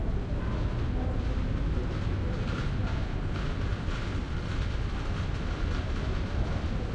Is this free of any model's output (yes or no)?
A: yes